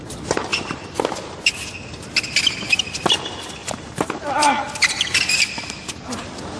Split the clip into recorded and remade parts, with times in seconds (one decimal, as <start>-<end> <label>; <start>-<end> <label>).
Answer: 0.0-0.5 recorded; 0.5-1.0 remade; 1.0-3.6 recorded; 3.6-5.9 remade; 5.9-6.6 recorded